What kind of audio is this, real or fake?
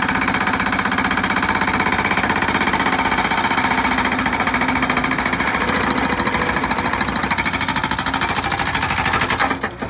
real